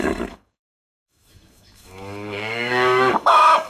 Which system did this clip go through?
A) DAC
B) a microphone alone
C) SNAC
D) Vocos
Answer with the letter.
A